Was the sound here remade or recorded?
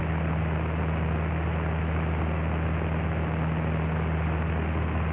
recorded